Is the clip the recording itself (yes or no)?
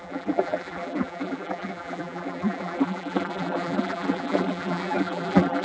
no